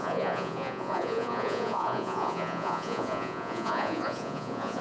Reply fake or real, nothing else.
fake